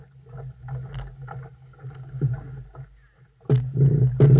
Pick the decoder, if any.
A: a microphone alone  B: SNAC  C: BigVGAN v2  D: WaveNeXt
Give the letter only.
A